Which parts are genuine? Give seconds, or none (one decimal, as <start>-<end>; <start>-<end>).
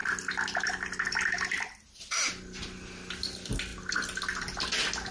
0.0-5.1